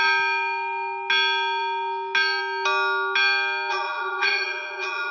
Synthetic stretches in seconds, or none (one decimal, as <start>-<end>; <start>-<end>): 3.7-5.1